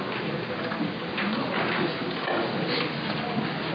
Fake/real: real